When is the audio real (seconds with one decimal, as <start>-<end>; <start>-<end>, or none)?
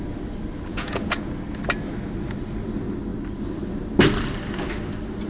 0.0-0.7; 1.3-5.3